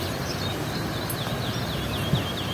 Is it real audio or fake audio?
real